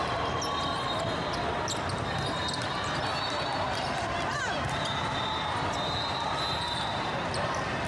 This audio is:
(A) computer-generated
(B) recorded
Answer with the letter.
B